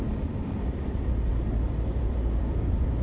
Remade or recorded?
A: remade